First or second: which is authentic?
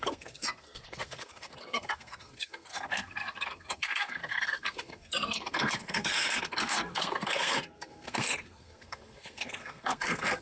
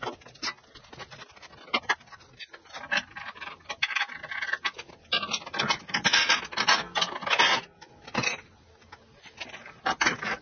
second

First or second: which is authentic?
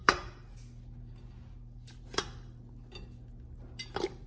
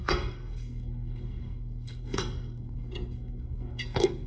first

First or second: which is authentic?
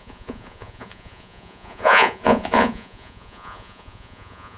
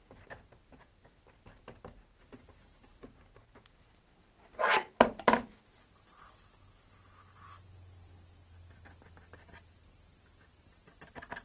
second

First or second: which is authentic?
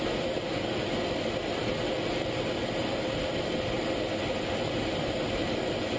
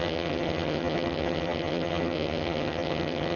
first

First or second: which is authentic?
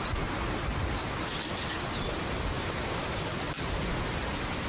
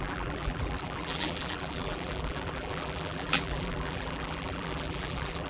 first